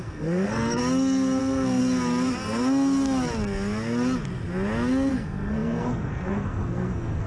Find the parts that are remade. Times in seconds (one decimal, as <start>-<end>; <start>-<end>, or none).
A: 0.0-0.8; 1.4-1.8; 5.1-7.3